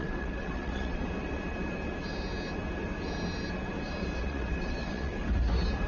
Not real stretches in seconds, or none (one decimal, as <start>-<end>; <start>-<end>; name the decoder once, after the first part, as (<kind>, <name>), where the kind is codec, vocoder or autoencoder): 0.0-1.0 (vocoder, WaveNeXt); 4.2-5.2